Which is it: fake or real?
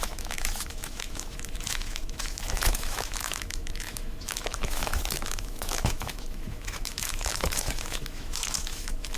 fake